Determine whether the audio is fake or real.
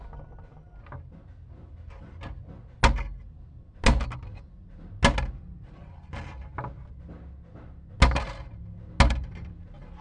real